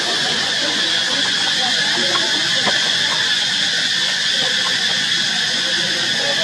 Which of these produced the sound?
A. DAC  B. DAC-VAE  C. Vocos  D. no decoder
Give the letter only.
C